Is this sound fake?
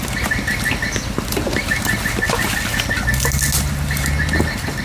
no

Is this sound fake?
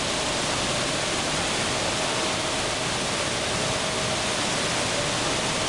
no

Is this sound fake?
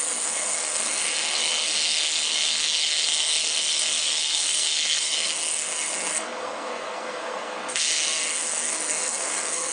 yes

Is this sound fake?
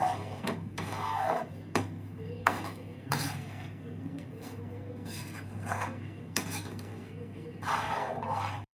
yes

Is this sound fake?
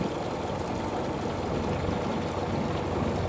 no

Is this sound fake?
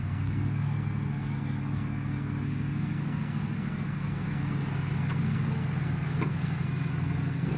yes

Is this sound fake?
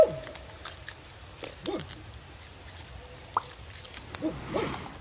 no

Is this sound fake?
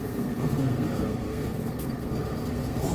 yes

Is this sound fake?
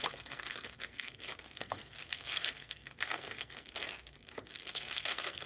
yes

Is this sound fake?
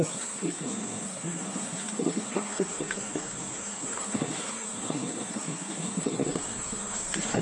yes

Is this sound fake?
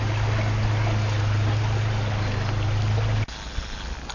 no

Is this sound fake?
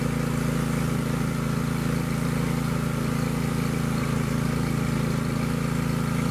no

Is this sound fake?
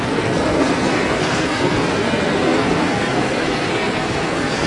yes